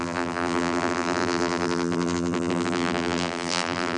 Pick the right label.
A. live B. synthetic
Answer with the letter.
B